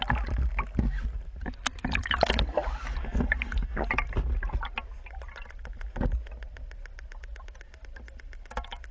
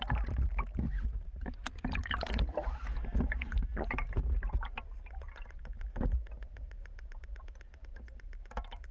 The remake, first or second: second